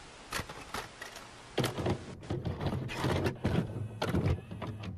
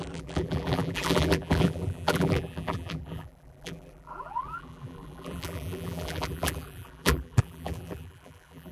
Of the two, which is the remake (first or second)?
second